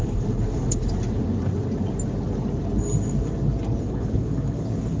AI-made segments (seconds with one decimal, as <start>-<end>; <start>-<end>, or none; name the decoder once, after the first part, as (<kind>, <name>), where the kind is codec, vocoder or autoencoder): 0.0-0.8 (codec, HILCodec); 3.8-5.0